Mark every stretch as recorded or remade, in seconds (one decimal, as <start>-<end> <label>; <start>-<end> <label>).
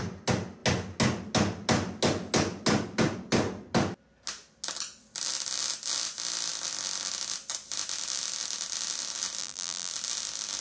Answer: 0.0-9.4 recorded; 9.4-9.9 remade; 9.9-10.6 recorded